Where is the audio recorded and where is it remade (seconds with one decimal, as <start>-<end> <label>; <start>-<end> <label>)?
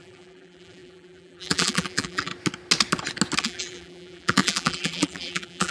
0.0-2.3 remade; 2.3-3.4 recorded; 3.4-5.7 remade